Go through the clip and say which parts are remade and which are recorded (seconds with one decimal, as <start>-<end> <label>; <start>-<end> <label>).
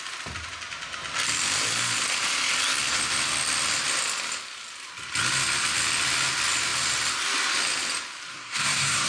0.0-8.3 recorded; 8.3-9.1 remade